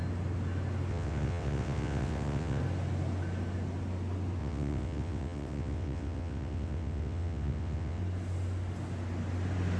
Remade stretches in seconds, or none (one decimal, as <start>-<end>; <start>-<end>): 0.9-2.6; 4.4-8.0